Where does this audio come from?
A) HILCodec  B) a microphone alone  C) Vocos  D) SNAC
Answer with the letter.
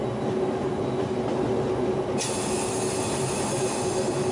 B